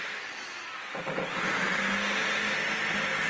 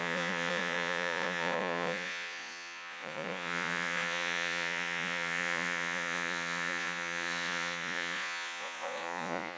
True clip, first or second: first